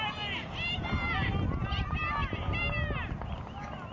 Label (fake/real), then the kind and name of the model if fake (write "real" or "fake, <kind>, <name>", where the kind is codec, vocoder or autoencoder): real